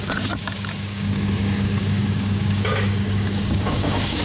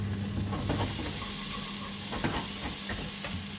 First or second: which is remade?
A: first